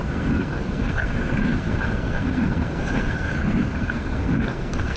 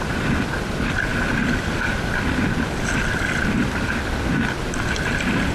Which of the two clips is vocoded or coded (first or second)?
first